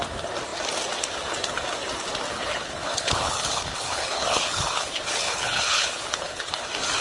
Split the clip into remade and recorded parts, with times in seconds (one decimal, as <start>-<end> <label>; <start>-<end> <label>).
0.0-2.3 recorded; 2.3-6.5 remade; 6.5-7.0 recorded